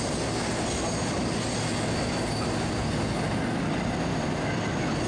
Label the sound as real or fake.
real